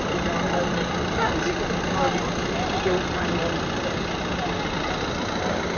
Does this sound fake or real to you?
real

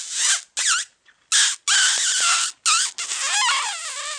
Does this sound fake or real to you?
real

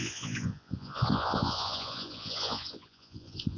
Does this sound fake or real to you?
fake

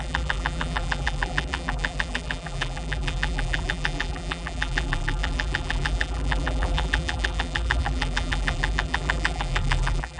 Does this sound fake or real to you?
fake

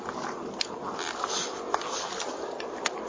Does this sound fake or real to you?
real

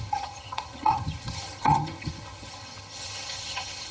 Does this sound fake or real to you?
fake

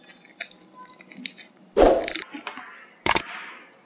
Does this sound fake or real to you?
real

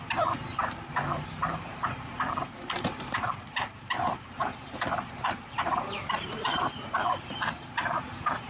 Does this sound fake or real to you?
fake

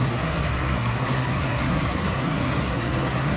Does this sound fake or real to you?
fake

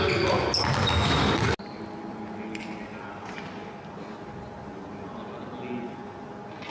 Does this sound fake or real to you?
real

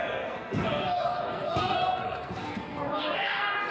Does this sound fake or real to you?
fake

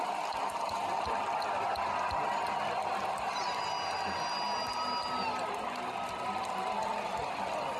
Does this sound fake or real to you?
real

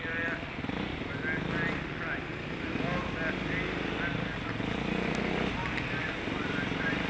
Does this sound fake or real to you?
real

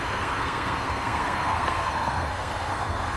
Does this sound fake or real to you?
fake